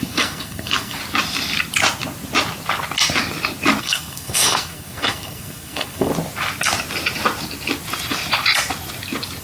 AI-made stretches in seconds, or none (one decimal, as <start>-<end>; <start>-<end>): 0.0-1.0; 3.8-6.1